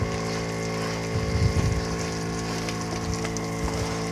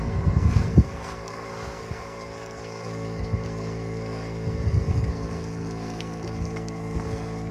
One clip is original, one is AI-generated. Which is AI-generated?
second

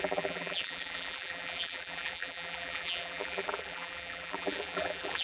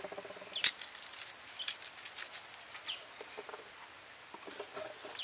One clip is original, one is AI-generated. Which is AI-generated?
first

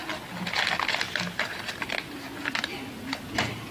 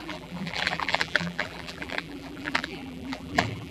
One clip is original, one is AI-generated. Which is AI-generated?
second